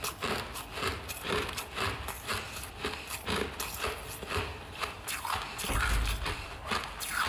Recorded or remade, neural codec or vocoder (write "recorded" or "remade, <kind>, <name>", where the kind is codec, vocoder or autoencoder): recorded